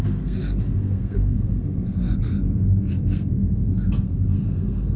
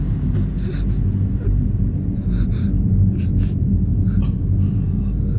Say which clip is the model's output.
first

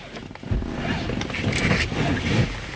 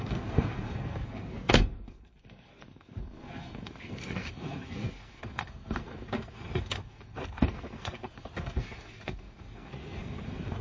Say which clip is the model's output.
second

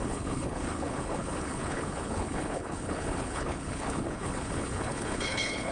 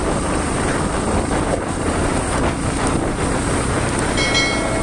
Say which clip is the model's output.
first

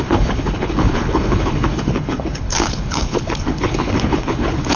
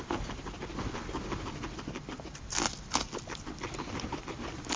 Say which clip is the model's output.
first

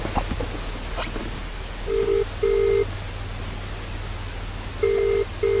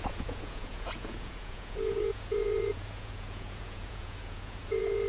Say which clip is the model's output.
second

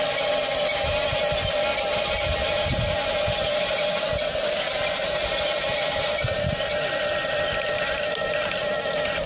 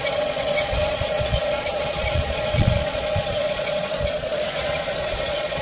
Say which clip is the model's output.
second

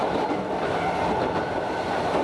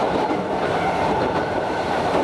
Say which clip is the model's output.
second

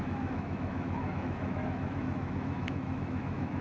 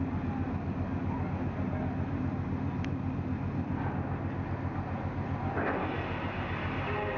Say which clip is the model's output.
first